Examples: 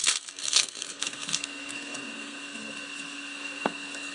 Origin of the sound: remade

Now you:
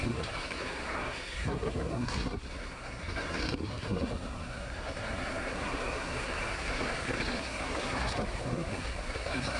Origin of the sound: remade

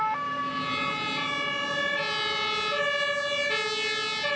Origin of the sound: recorded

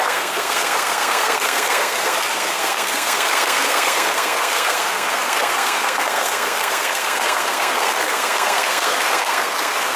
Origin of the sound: remade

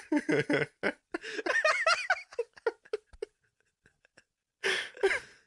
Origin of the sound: recorded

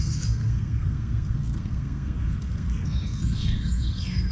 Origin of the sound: remade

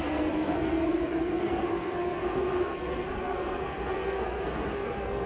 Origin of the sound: remade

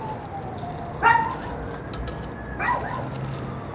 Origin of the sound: recorded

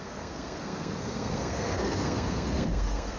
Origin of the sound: remade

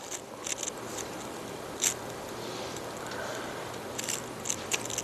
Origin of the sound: recorded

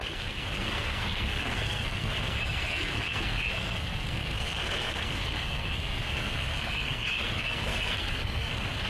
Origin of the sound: remade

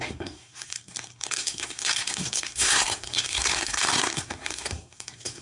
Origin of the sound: remade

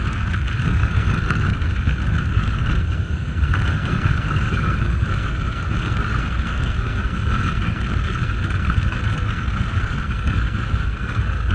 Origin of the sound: remade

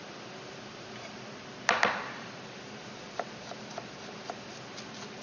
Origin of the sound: recorded